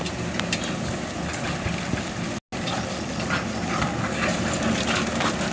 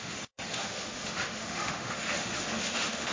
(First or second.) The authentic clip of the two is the first